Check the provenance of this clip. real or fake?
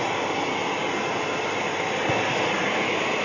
real